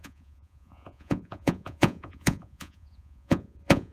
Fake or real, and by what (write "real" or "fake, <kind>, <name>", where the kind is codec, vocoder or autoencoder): fake, vocoder, Vocos